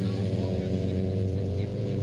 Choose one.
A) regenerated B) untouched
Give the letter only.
A